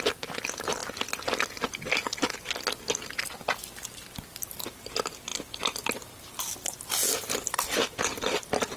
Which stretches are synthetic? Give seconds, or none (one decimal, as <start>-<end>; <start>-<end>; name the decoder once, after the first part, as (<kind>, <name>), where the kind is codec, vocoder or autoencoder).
5.3-6.3 (vocoder, BigVGAN v2)

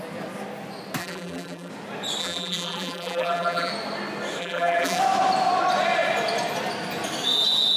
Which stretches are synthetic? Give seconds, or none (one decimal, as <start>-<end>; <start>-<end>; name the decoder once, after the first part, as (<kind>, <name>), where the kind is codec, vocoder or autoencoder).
1.0-1.7 (vocoder, BigVGAN v2); 2.2-3.7; 4.4-5.0

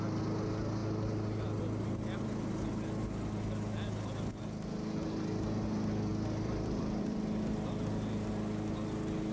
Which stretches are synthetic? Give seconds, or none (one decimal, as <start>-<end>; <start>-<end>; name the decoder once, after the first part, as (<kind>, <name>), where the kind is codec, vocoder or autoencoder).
6.1-7.7 (vocoder, BigVGAN v2)

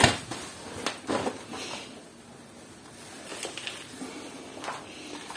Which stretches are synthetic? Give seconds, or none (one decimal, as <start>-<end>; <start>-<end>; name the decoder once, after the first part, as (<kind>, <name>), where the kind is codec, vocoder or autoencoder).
none

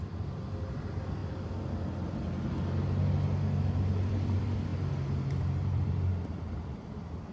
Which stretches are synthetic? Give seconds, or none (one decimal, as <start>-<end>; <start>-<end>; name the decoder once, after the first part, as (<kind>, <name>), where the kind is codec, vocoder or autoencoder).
0.0-1.2 (vocoder, BigVGAN v2); 4.1-4.7; 5.6-7.3

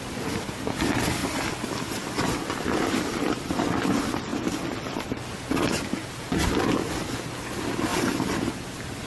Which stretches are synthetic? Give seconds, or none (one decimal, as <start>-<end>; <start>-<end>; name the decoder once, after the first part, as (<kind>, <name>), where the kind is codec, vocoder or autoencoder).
0.0-1.2 (vocoder, BigVGAN v2); 1.9-9.1

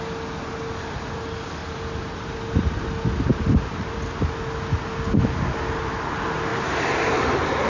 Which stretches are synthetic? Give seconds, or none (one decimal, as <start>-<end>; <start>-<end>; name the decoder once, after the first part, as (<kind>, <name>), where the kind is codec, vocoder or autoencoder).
1.6-2.4 (vocoder, BigVGAN v2); 3.3-4.0; 6.5-7.1